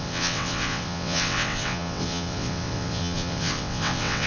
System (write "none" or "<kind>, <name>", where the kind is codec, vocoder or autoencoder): vocoder, WaveNeXt